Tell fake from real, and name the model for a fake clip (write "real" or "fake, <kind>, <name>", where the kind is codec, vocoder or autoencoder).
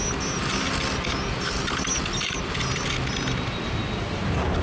real